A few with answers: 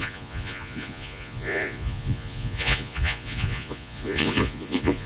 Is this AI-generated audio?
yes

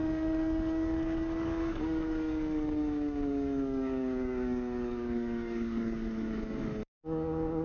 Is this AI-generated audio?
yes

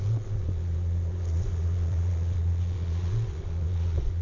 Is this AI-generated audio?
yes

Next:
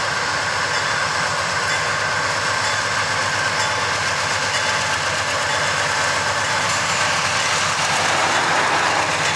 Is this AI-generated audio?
no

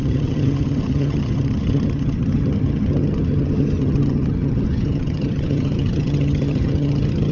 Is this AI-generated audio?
yes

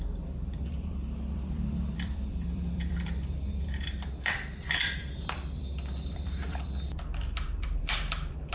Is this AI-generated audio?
yes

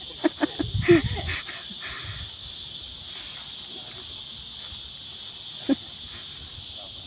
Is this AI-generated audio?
no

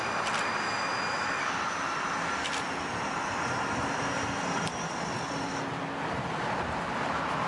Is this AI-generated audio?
no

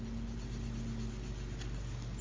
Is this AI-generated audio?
no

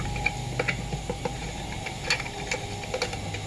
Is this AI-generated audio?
no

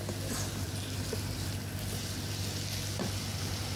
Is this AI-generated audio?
no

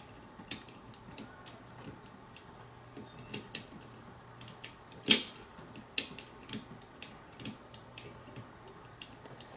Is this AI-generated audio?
no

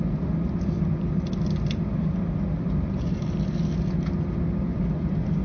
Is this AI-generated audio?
no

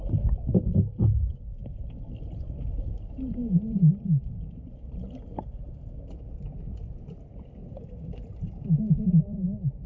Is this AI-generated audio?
no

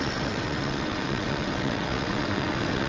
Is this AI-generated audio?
yes